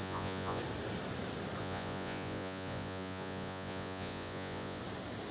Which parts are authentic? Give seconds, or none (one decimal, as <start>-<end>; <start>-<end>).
0.6-1.6; 4.8-5.3